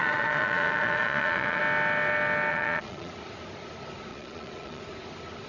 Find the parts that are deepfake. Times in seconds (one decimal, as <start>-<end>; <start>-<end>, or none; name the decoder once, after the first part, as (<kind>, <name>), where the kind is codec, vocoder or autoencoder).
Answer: 0.0-1.6 (vocoder, Vocos); 2.5-3.1; 4.1-4.8